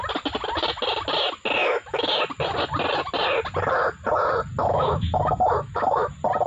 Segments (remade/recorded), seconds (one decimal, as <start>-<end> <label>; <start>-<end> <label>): 0.0-1.6 recorded; 1.6-2.2 remade; 2.2-4.6 recorded; 4.6-6.1 remade; 6.1-6.5 recorded